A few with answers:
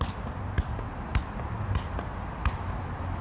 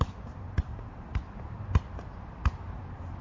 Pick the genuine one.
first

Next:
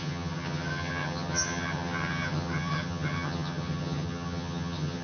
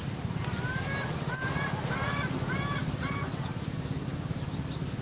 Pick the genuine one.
second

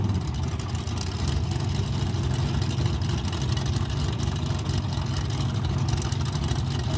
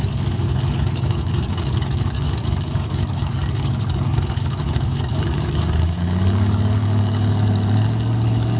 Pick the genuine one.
first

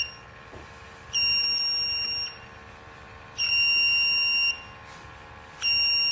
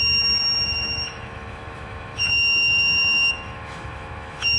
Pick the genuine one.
first